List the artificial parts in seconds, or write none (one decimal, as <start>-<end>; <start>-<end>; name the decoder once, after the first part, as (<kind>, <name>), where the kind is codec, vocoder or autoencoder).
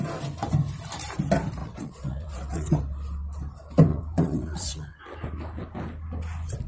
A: 1.6-2.8 (vocoder, WaveNeXt); 3.9-5.0